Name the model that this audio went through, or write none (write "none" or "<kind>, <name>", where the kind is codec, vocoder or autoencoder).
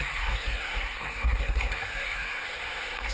codec, SNAC